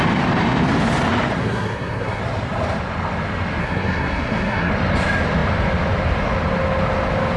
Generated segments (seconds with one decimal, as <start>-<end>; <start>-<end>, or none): 1.4-2.2; 3.6-4.7